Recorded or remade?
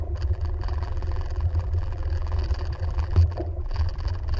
remade